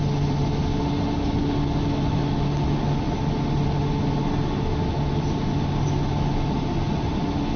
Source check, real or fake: real